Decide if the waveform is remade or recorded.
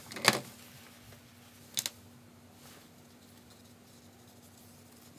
recorded